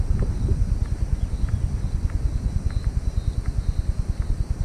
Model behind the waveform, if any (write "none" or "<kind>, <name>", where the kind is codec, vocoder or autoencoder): none